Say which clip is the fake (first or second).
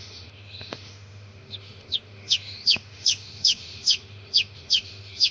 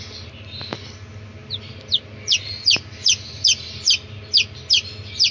first